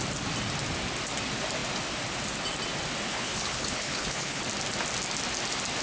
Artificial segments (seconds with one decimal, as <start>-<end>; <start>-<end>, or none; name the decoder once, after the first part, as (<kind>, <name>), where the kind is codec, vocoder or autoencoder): 3.1-4.4 (codec, HILCodec)